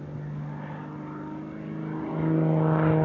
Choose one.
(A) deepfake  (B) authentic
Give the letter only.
B